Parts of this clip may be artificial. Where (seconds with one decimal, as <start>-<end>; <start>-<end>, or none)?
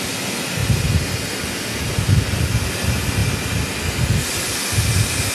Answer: none